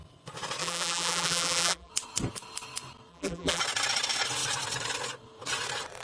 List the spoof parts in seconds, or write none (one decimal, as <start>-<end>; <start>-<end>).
0.6-1.9; 3.1-3.6